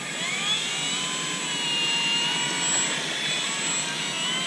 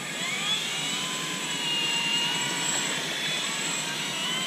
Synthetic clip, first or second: second